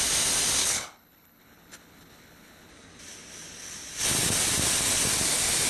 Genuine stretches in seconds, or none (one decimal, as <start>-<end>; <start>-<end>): 0.0-0.6; 2.7-5.7